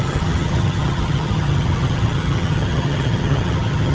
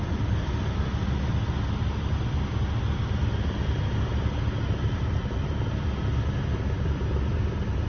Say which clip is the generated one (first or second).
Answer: first